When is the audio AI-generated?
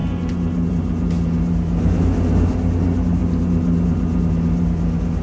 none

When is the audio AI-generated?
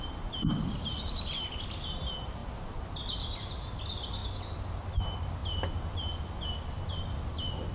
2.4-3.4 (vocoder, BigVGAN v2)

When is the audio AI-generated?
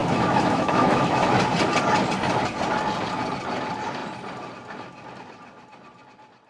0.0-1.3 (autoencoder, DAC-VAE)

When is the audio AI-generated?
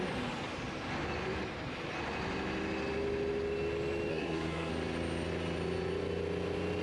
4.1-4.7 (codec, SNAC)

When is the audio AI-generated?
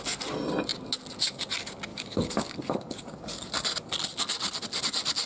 1.9-3.5 (codec, DAC)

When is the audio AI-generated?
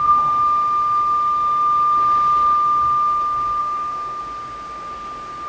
3.6-4.2 (codec, SNAC)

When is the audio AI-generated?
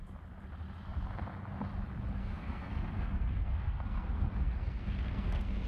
2.2-5.7 (codec, SNAC)